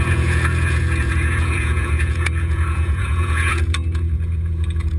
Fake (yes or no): yes